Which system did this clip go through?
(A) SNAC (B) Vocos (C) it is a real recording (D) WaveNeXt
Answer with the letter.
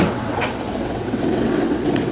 D